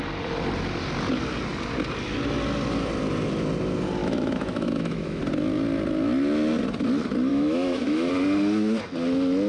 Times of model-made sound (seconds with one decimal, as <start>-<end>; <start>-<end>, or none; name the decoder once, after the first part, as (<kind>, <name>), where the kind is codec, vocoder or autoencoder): 4.0-5.2 (autoencoder, DAC-VAE); 7.3-8.1